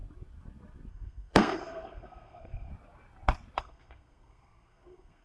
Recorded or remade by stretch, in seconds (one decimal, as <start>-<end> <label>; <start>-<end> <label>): 0.0-0.9 recorded; 0.9-2.7 remade; 2.7-3.6 recorded; 3.6-5.2 remade